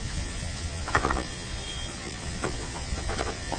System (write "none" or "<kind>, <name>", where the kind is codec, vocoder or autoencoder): vocoder, Vocos